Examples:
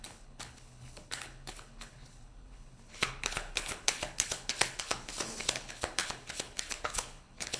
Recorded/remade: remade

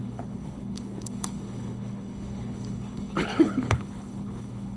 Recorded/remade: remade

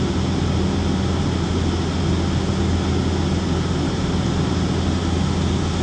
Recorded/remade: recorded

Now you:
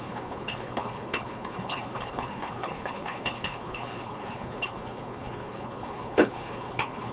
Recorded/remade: remade